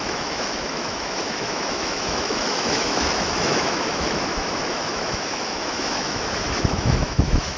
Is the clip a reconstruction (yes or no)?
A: yes